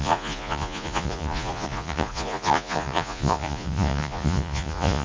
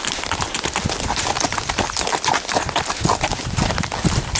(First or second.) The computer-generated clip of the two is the first